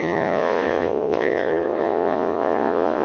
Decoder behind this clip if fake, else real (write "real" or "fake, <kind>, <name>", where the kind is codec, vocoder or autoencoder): fake, vocoder, Vocos